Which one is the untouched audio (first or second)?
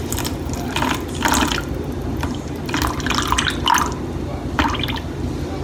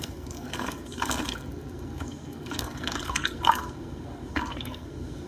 first